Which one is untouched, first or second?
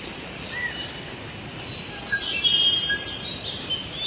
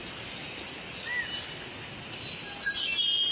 second